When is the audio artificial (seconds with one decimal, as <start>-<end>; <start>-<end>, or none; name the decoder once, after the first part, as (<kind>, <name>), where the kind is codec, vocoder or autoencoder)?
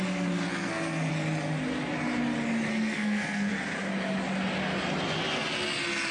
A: 0.5-1.1 (codec, SNAC); 2.7-3.5